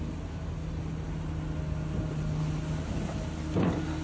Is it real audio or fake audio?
real